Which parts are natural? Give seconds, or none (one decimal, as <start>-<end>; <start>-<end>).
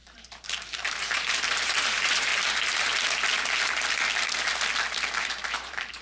2.3-5.2